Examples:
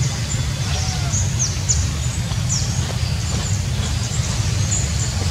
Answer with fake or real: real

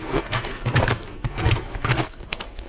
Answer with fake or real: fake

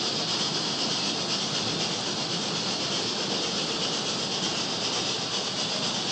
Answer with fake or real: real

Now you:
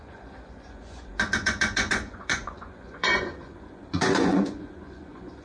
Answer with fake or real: fake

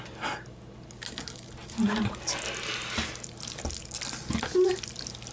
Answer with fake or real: real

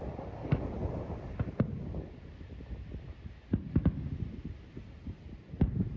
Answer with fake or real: real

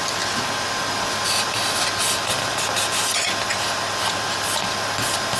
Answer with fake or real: real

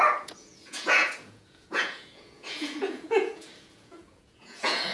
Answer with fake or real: fake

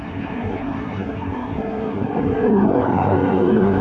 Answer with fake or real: fake